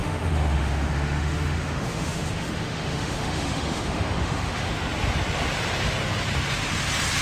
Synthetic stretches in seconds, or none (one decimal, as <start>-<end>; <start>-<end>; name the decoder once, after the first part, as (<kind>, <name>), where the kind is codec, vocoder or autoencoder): 0.0-4.7 (autoencoder, DAC-VAE)